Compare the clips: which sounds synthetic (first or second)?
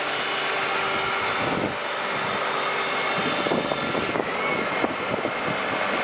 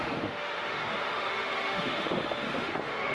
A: second